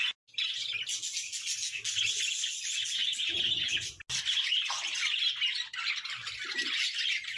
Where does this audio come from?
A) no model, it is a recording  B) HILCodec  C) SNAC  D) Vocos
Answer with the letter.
A